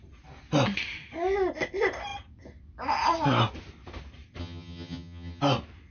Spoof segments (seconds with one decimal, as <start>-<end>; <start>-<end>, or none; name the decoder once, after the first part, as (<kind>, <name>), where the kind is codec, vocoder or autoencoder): 4.4-5.4 (vocoder, HiFi-GAN)